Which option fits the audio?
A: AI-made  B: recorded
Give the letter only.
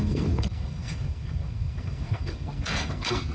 A